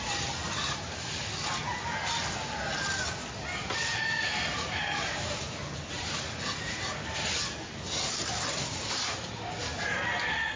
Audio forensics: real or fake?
real